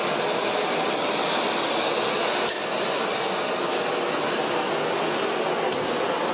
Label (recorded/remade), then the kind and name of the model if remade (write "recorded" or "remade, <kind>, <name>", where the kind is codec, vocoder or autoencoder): recorded